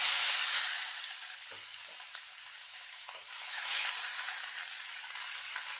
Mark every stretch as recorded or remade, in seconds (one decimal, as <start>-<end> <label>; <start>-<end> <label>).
0.0-2.6 recorded; 2.6-3.9 remade; 3.9-5.8 recorded